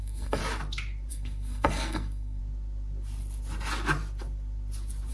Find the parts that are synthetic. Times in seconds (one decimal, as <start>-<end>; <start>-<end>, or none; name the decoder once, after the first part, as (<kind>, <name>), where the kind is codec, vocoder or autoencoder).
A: 0.0-0.4 (codec, SNAC); 1.1-2.4